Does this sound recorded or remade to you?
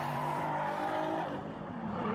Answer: remade